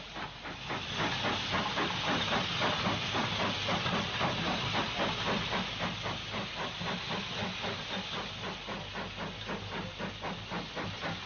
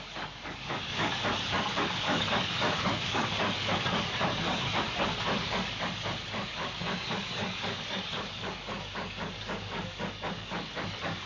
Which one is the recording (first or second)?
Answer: first